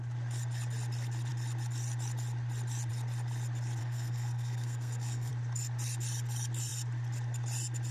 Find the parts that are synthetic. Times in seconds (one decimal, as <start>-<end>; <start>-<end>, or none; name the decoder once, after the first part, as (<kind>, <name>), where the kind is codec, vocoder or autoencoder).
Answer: 3.8-5.3 (codec, SNAC)

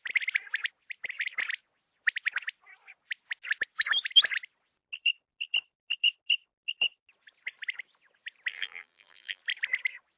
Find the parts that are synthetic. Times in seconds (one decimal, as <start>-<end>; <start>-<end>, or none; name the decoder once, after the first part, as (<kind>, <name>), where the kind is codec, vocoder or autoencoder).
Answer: 8.5-9.4 (vocoder, BigVGAN v2)

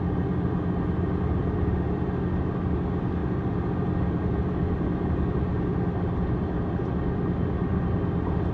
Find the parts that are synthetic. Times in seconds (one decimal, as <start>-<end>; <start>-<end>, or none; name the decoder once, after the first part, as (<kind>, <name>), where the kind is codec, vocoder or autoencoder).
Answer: none

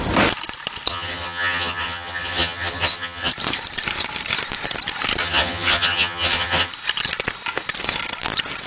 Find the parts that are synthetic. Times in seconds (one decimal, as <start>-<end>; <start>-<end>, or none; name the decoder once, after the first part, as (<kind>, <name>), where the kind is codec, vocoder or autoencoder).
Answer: 0.9-3.3 (vocoder, HiFi-GAN); 5.2-6.7

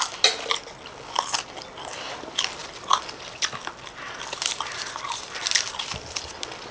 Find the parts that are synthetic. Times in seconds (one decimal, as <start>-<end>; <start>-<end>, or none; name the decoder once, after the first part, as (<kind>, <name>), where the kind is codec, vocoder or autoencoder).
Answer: none

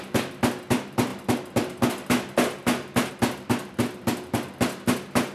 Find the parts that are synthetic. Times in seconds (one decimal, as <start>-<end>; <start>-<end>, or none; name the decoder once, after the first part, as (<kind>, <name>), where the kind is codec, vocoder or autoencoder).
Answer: none

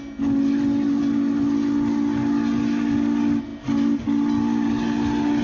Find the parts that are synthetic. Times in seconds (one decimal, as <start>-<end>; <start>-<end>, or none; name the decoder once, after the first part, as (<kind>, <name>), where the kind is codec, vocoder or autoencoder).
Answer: none

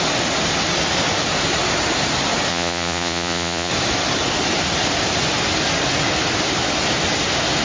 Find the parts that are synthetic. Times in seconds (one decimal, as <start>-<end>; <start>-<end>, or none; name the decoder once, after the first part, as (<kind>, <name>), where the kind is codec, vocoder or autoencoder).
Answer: 2.5-3.7 (vocoder, Vocos)